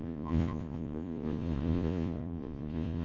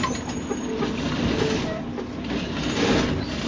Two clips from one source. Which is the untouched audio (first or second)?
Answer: second